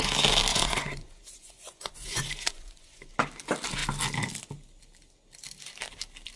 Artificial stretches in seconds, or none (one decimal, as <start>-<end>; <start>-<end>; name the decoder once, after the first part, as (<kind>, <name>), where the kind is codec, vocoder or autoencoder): 0.5-3.1 (vocoder, Vocos)